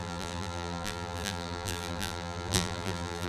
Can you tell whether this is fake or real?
fake